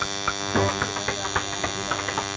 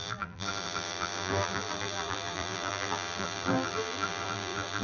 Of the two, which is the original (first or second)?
first